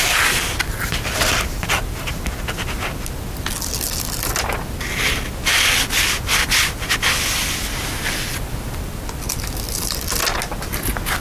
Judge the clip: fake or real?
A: real